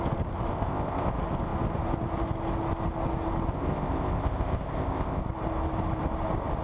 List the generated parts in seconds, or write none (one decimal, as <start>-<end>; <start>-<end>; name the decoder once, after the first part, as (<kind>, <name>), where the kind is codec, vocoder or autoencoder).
0.5-1.1 (codec, ZipCodec); 3.5-5.2